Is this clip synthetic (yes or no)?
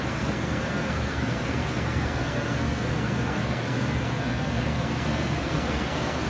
yes